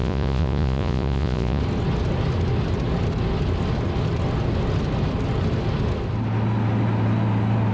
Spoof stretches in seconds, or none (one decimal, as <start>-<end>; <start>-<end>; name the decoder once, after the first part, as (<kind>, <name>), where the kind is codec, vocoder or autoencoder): 0.0-1.6 (vocoder, Vocos)